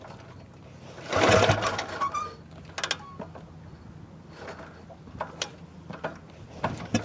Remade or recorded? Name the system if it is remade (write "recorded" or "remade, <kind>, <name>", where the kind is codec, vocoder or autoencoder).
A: recorded